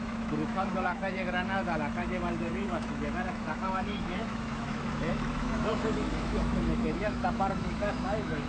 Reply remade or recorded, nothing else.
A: remade